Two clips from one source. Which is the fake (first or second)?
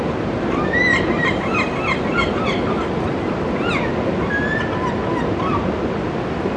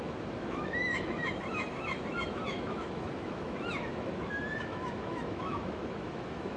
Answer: second